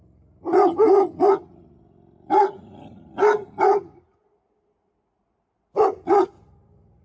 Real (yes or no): yes